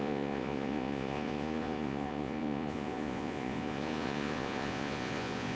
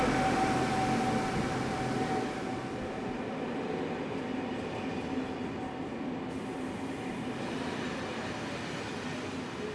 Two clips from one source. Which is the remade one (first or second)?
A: first